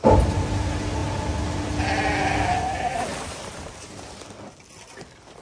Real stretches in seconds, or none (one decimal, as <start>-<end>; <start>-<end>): 0.0-3.1; 3.9-5.4